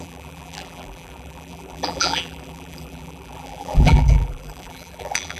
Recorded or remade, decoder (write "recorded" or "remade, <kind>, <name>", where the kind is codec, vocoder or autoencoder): remade, vocoder, BigVGAN v2